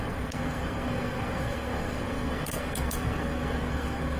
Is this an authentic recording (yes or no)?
no